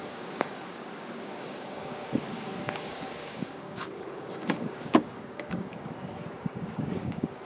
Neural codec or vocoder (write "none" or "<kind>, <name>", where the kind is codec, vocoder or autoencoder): codec, DAC